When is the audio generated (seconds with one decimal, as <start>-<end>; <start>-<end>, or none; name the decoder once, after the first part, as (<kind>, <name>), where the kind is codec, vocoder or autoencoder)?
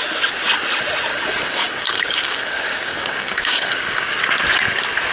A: 1.1-4.2 (codec, DAC)